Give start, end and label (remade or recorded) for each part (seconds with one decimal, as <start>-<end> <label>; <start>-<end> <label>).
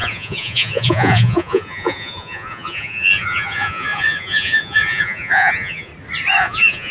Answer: 0.0-5.9 remade; 5.9-6.4 recorded; 6.4-6.9 remade